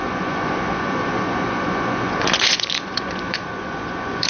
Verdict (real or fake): fake